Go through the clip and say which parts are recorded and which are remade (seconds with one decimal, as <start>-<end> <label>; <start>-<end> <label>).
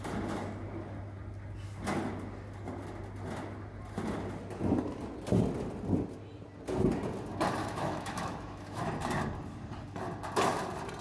0.0-7.6 recorded; 7.6-8.9 remade; 8.9-11.0 recorded